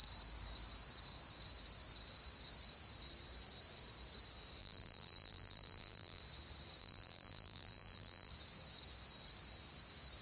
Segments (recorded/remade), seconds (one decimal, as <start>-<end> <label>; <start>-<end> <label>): 0.0-4.6 recorded; 4.6-6.2 remade; 6.2-6.8 recorded; 6.8-8.3 remade; 8.3-10.2 recorded